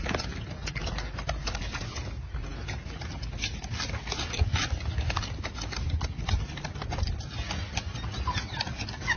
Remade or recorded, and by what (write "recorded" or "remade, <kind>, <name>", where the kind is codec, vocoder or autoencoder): recorded